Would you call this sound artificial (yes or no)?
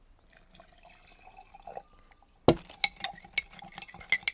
no